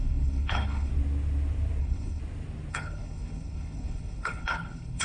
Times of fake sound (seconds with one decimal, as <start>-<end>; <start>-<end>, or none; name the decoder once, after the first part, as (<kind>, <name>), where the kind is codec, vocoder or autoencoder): 0.0-0.9 (codec, HILCodec); 1.8-2.2; 2.7-5.0